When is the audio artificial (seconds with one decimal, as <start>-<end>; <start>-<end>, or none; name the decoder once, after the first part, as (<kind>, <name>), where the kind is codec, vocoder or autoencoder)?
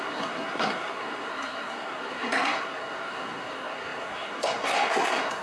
0.0-5.4 (codec, SNAC)